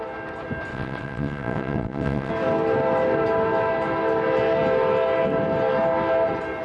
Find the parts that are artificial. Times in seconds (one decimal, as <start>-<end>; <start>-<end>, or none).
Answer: 0.7-2.3